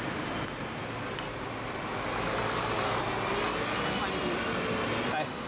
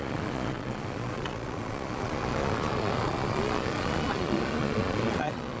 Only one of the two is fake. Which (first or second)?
second